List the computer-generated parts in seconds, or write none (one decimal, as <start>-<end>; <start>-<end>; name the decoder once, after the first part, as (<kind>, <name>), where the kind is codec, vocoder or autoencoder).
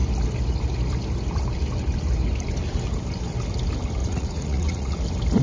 4.0-5.0 (vocoder, Vocos)